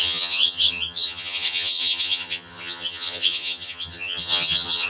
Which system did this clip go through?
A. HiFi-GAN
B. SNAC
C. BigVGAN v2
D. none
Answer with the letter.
A